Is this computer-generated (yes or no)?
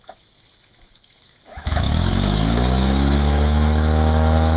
yes